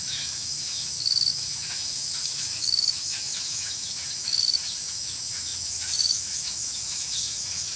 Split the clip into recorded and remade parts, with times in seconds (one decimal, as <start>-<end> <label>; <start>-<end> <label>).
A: 0.0-7.8 remade